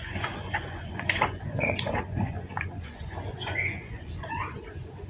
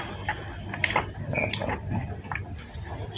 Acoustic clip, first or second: second